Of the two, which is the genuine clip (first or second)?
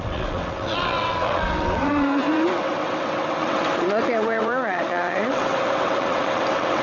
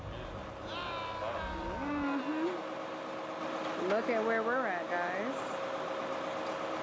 second